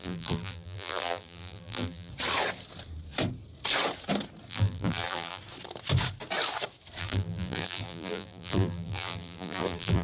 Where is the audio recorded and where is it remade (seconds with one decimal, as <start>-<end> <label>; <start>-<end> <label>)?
0.0-2.1 remade; 2.1-4.5 recorded; 4.5-5.4 remade; 5.4-7.0 recorded; 7.0-10.0 remade